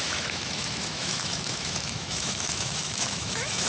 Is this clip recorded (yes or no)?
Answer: no